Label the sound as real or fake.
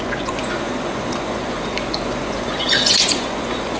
fake